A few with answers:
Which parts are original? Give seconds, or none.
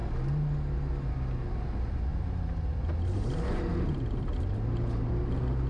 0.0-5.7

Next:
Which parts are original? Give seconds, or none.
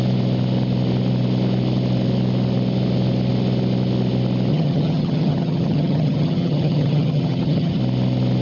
0.0-4.5; 7.8-8.4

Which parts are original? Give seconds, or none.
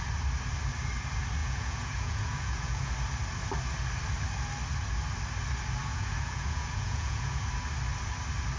0.0-1.4; 2.9-5.9; 7.4-8.6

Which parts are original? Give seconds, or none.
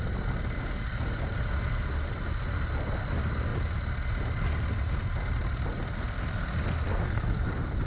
0.0-6.9; 7.5-7.9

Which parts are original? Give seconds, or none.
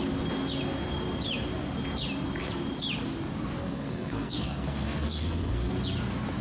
0.0-3.6; 5.7-6.4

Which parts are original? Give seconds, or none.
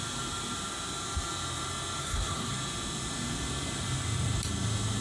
0.0-2.0; 2.5-5.0